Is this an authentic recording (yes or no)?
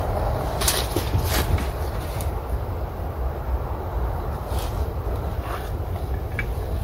yes